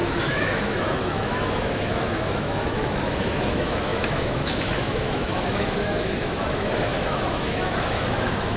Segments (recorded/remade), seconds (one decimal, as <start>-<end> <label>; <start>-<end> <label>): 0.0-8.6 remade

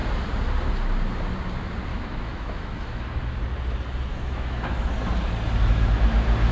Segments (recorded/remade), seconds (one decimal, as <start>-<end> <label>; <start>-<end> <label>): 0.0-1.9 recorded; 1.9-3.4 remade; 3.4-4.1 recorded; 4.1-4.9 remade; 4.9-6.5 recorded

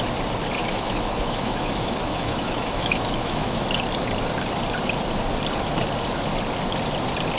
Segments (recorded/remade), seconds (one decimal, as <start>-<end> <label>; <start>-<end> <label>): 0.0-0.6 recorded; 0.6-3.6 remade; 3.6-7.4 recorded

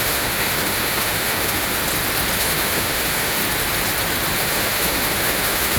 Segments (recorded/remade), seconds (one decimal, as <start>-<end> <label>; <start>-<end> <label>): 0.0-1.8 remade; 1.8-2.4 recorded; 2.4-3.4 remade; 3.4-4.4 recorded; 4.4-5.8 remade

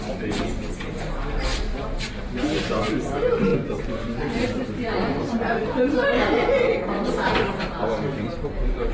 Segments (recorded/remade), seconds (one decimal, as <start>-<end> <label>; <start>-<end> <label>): 0.0-8.9 recorded